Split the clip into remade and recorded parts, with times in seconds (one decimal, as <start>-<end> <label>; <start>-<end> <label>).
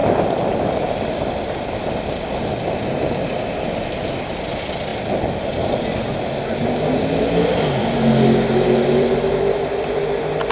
0.0-10.5 recorded